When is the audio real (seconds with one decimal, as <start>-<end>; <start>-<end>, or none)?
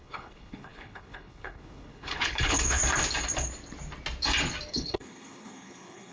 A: 2.8-4.7